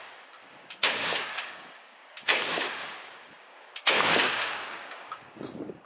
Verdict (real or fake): fake